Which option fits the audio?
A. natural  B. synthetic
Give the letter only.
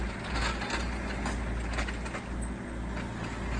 A